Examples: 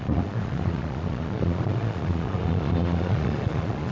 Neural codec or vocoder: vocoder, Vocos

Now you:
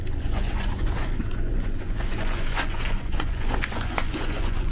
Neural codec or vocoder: vocoder, Vocos